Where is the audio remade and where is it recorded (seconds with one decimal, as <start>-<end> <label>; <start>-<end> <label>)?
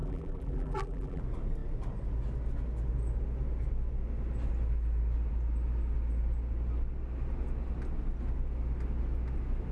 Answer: 0.0-1.2 remade; 1.2-9.7 recorded